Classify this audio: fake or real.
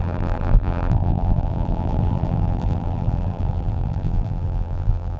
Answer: fake